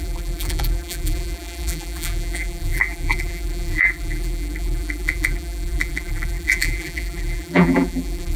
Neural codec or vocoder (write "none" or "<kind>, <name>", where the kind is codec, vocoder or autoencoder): vocoder, BigVGAN v2